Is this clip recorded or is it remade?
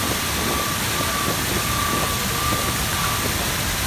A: recorded